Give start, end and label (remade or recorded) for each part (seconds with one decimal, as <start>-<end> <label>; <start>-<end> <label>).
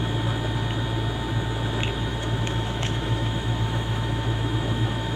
0.0-2.1 recorded; 2.1-5.2 remade